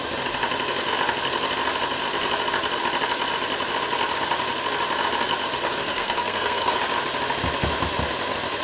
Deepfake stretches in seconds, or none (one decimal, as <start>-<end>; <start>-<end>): 5.8-6.8